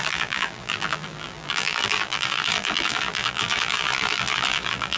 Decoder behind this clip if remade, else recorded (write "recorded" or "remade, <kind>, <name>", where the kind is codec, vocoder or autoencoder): remade, vocoder, BigVGAN v2